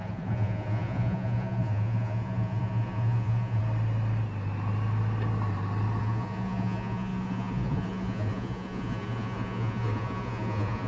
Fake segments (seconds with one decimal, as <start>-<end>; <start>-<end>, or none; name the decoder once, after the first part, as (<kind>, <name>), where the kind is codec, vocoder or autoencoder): 0.0-3.6 (vocoder, Vocos); 6.0-10.9